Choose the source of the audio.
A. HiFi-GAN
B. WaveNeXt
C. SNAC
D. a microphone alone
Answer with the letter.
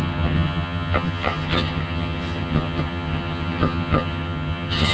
A